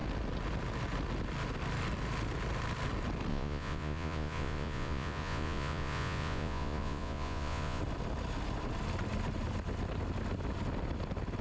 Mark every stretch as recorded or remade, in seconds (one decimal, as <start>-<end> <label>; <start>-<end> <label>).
0.0-3.3 recorded; 3.3-7.8 remade; 7.8-11.4 recorded